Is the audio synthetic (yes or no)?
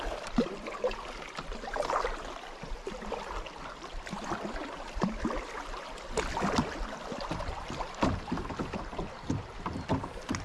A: no